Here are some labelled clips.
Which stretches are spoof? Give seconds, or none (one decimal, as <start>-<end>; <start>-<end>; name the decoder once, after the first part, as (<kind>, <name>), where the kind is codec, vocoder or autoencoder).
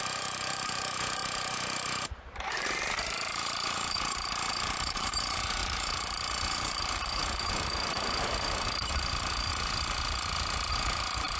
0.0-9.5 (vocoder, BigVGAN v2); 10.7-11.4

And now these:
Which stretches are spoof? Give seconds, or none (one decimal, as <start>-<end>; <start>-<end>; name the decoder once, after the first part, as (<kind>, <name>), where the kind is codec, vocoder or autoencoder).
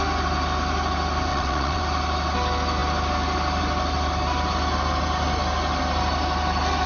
1.3-1.8 (vocoder, WaveNeXt)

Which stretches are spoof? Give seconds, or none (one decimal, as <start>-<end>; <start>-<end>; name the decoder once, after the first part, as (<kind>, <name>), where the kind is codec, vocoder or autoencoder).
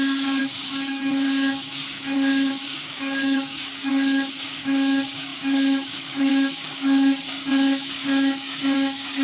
0.0-9.2 (codec, DAC)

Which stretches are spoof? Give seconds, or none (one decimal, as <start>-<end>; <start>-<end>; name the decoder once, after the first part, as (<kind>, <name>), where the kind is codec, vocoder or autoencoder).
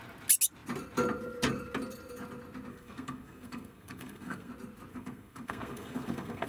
2.7-4.5 (codec, SNAC); 4.9-6.5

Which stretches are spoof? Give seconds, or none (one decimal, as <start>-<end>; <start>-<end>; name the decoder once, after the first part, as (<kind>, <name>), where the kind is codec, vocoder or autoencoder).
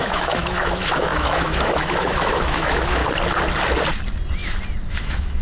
0.0-3.0 (autoencoder, DAC-VAE); 4.9-5.4